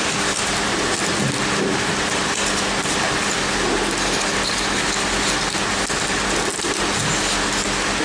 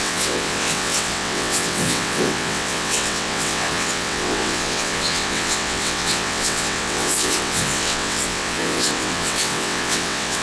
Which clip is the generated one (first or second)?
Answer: second